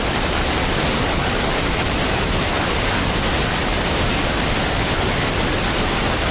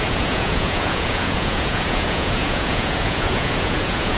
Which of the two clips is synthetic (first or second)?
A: second